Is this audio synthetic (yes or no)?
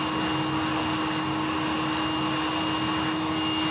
no